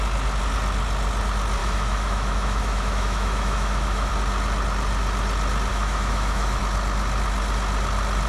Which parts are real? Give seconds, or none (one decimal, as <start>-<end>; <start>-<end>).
0.0-1.6; 4.1-5.7; 6.6-8.3

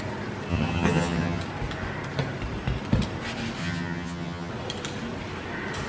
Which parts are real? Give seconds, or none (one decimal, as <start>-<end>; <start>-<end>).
0.0-0.5; 1.4-3.6; 4.5-5.9

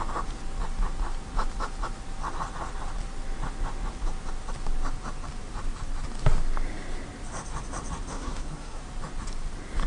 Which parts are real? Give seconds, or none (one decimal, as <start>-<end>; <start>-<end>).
0.0-8.1; 8.8-9.9

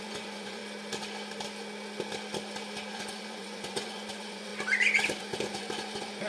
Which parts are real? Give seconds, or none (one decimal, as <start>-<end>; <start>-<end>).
0.6-2.9; 4.5-5.2